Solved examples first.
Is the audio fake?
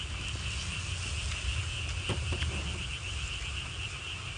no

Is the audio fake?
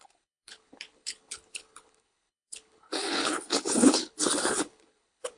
yes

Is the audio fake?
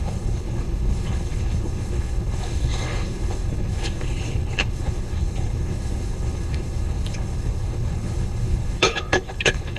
yes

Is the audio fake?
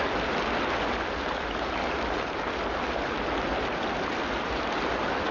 no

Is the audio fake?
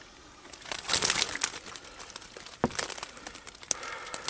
no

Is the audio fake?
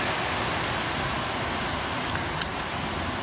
no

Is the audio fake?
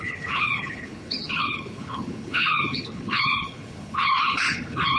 yes